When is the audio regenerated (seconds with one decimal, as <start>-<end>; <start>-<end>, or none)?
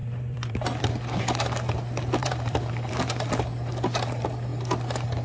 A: 0.0-0.8; 2.2-3.0